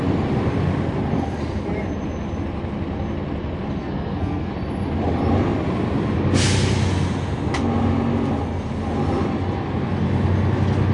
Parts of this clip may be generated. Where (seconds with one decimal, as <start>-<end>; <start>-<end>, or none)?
3.8-4.5